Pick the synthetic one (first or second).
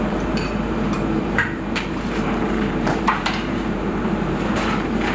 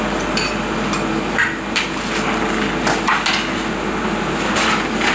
first